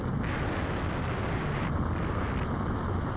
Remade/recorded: recorded